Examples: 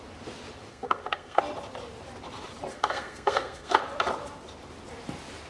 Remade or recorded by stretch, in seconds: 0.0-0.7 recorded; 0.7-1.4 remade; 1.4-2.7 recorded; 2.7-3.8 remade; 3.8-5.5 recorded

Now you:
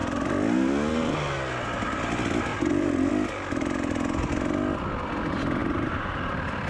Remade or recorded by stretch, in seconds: 0.0-2.5 recorded; 2.5-3.1 remade; 3.1-5.6 recorded; 5.6-6.3 remade; 6.3-6.7 recorded

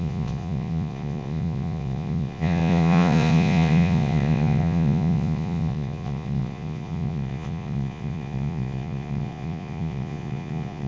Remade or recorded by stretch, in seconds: 0.0-10.9 remade

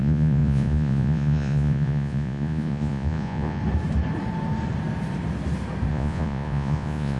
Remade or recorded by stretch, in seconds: 0.0-3.6 remade; 3.6-5.9 recorded; 5.9-7.2 remade

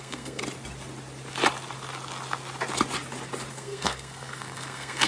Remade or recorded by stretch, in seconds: 0.0-0.4 remade; 0.4-3.5 recorded; 3.5-5.1 remade

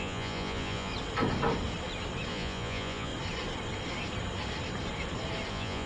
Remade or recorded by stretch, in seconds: 0.0-0.9 remade; 0.9-2.3 recorded; 2.3-3.1 remade; 3.1-5.5 recorded; 5.5-5.9 remade

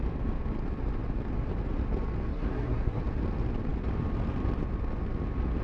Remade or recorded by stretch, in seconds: 0.0-2.3 recorded; 2.3-3.0 remade; 3.0-5.6 recorded